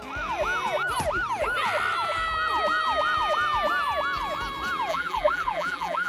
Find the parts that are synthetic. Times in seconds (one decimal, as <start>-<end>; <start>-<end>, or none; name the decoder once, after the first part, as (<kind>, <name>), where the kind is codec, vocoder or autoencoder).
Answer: 4.9-6.1 (vocoder, BigVGAN v2)